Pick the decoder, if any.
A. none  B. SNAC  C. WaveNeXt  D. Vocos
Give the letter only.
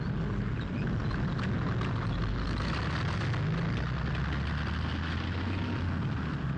A